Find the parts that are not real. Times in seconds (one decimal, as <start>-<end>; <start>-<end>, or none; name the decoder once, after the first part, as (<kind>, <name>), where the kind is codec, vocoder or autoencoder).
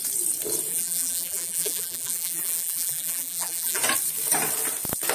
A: 0.7-3.8 (vocoder, BigVGAN v2)